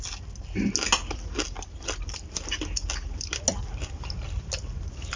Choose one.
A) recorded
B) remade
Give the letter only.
A